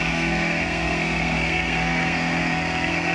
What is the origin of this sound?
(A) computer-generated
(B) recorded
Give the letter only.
A